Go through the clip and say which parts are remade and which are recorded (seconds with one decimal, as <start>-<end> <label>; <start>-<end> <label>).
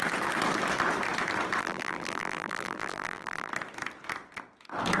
0.0-1.6 recorded; 1.6-3.5 remade; 3.5-5.0 recorded